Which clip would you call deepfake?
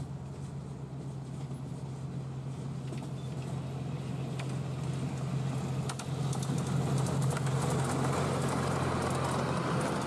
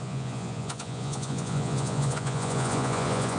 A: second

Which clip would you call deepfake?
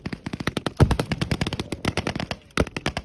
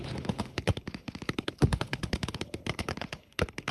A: second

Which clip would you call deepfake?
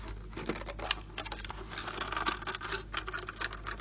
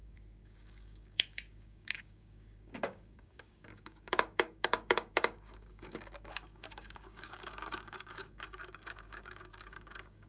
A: second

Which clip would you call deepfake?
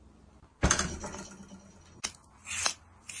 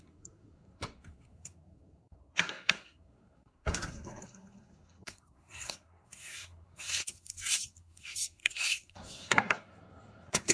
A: second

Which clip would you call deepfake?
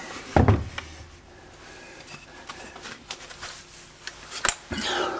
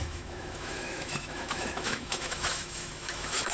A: second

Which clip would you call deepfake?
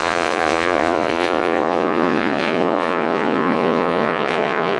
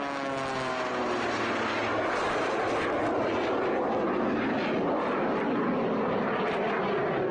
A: first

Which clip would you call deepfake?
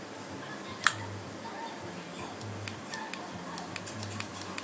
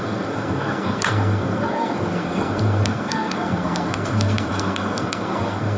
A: second